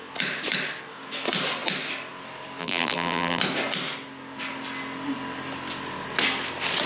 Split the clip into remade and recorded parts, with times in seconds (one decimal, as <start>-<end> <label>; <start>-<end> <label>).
0.0-2.6 recorded; 2.6-3.4 remade; 3.4-6.9 recorded